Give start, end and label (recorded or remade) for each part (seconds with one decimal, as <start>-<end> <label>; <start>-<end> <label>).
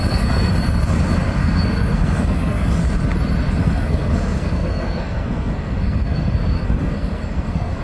0.0-0.5 remade; 0.5-1.4 recorded; 1.4-2.8 remade; 2.8-3.6 recorded; 3.6-7.8 remade